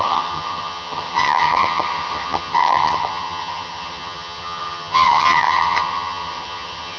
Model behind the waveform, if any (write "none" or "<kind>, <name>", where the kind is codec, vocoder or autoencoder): vocoder, HiFi-GAN